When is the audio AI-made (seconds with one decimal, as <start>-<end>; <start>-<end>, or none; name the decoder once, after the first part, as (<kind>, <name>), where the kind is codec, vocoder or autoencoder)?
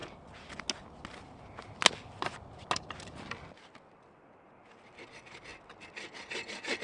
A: none